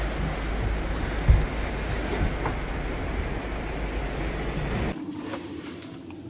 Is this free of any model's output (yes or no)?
yes